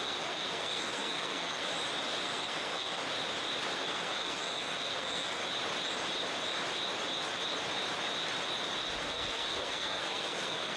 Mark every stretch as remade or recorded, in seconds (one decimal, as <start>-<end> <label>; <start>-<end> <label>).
0.0-1.7 remade; 1.7-2.2 recorded; 2.2-3.0 remade; 3.0-3.7 recorded; 3.7-5.4 remade; 5.4-9.0 recorded; 9.0-10.8 remade

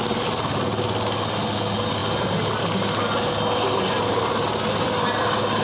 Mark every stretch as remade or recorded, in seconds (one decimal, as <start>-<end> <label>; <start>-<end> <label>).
0.0-5.6 recorded

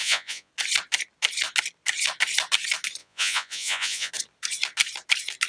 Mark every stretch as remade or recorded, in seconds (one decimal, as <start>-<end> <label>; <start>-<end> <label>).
0.0-0.5 remade; 0.5-3.0 recorded; 3.0-4.1 remade; 4.1-5.5 recorded

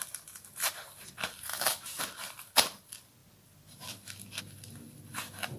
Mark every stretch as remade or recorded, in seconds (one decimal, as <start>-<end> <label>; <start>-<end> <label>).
0.0-1.5 recorded; 1.5-2.0 remade; 2.0-5.6 recorded

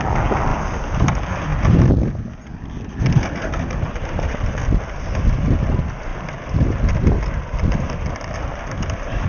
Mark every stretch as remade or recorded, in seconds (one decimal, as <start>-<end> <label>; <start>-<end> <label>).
0.0-9.3 recorded

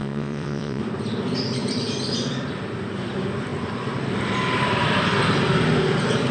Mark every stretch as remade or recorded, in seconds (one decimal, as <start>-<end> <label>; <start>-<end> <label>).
0.0-0.8 remade; 0.8-6.3 recorded